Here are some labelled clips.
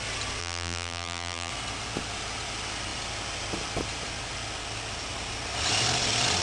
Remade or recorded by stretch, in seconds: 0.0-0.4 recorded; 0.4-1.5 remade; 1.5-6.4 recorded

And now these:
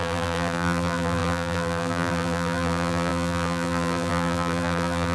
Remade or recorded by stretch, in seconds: 0.0-5.1 remade

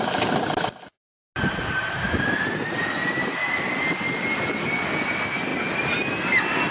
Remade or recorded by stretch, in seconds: 0.0-3.2 recorded; 3.2-4.6 remade; 4.6-6.7 recorded